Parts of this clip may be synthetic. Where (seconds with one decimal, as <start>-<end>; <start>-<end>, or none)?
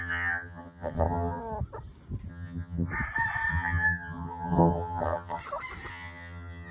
0.0-1.4; 2.3-2.9; 3.5-5.4; 5.9-6.7